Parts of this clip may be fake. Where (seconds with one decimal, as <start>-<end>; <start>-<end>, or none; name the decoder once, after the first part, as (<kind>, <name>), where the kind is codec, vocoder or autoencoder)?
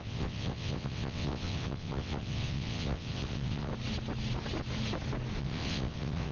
0.0-3.7 (vocoder, WaveNeXt); 5.4-6.3